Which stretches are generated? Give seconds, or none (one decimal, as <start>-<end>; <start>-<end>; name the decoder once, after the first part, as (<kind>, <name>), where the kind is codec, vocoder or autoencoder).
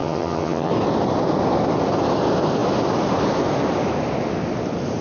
0.0-0.7 (vocoder, HiFi-GAN)